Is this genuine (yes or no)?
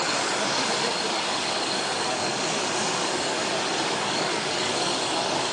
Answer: no